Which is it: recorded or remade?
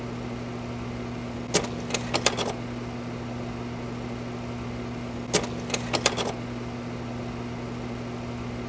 recorded